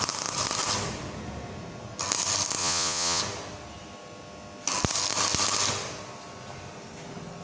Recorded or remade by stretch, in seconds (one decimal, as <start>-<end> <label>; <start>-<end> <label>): 0.0-2.6 recorded; 2.6-3.2 remade; 3.2-7.4 recorded